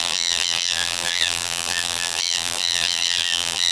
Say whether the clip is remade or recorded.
remade